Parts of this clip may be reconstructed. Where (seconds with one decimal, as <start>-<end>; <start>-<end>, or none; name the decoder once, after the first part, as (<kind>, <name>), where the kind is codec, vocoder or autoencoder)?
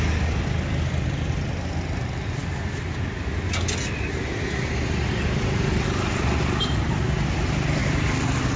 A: none